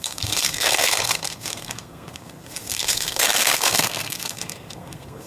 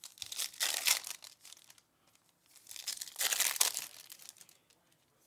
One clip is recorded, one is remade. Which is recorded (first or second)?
second